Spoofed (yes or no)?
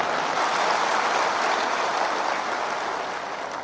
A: no